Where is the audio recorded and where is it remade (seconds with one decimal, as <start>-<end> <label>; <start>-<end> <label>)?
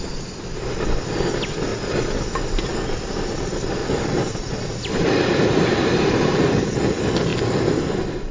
0.0-3.8 recorded; 3.8-6.8 remade; 6.8-8.3 recorded